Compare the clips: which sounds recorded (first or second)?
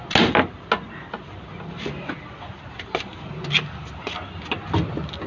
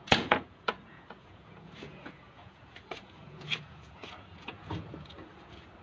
first